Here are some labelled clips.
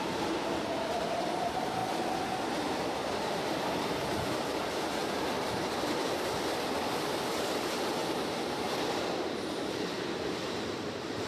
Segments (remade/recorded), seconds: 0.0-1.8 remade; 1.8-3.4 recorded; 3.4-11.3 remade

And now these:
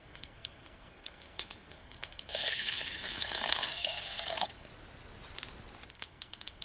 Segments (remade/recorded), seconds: 0.0-4.7 remade; 4.7-5.9 recorded; 5.9-6.6 remade